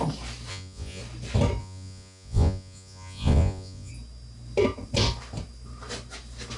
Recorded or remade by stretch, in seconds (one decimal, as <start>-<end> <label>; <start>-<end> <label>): 0.0-0.5 recorded; 0.5-1.0 remade; 1.0-1.6 recorded; 1.6-3.9 remade; 3.9-6.6 recorded